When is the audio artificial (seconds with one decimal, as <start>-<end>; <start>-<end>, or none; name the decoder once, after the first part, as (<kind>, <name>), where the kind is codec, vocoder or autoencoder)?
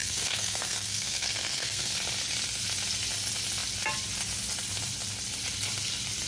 0.0-1.9 (codec, SNAC)